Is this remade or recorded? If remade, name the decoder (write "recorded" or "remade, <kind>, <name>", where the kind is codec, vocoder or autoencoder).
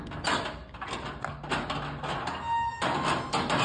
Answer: recorded